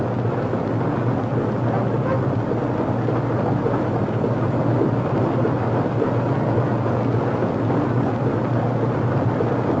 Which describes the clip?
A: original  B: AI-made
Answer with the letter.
A